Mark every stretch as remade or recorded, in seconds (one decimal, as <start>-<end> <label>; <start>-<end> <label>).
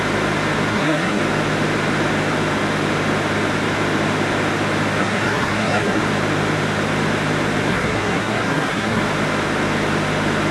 0.0-0.7 recorded; 0.7-1.2 remade; 1.2-5.0 recorded; 5.0-6.0 remade; 6.0-7.7 recorded; 7.7-9.0 remade; 9.0-10.5 recorded